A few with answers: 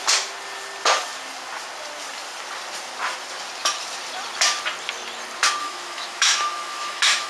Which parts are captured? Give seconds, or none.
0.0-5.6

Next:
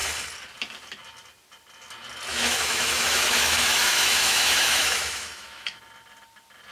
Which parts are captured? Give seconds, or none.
0.0-2.3; 5.8-6.7

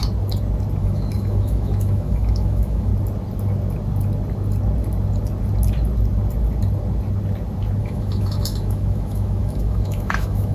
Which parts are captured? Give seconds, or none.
0.0-0.8; 2.9-7.8